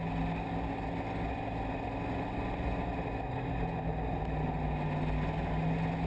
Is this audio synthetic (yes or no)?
no